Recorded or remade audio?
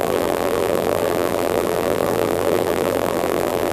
remade